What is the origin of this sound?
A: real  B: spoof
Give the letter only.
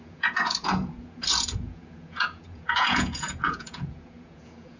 B